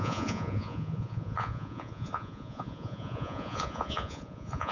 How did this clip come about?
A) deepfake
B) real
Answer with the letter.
A